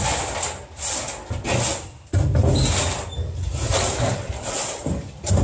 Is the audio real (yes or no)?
yes